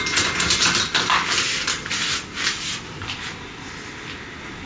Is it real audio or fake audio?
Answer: real